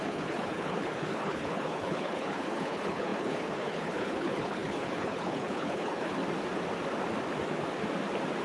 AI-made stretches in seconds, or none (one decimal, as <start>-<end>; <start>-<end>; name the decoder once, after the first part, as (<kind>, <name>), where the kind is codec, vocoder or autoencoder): 0.0-6.2 (codec, HILCodec)